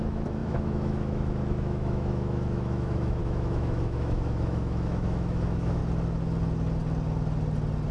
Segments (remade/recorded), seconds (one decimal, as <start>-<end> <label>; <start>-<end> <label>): 0.0-5.8 remade; 5.8-7.9 recorded

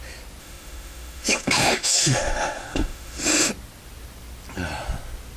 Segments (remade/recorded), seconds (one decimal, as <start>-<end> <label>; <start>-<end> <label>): 0.0-0.4 recorded; 0.4-3.5 remade; 3.5-5.4 recorded